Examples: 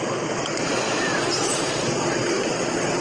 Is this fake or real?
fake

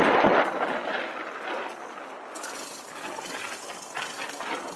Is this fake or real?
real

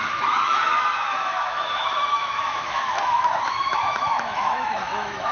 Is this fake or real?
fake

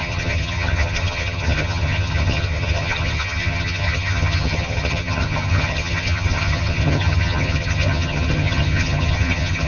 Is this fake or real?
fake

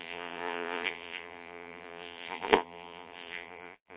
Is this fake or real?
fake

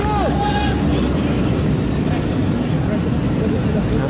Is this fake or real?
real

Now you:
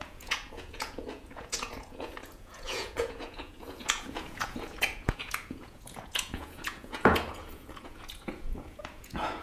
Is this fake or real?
fake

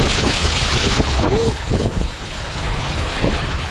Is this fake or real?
fake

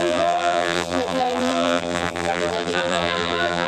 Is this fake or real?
fake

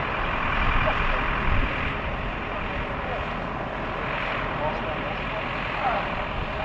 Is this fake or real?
real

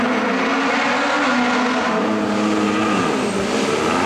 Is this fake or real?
real